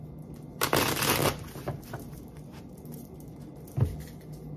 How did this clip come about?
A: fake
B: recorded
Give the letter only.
B